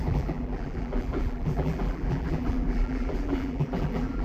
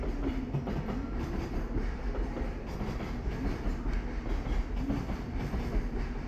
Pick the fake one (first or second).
first